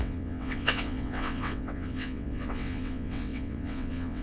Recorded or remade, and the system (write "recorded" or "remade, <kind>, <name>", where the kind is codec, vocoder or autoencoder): remade, vocoder, WaveNeXt